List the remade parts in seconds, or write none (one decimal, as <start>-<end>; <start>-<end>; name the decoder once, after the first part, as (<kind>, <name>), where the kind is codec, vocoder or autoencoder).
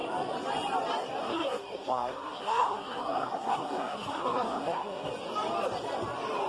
1.2-5.1 (codec, SNAC)